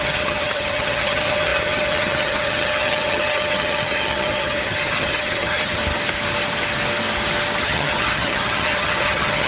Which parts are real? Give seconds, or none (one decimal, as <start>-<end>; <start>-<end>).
5.8-7.6